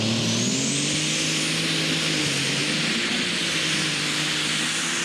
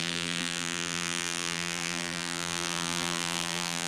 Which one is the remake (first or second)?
second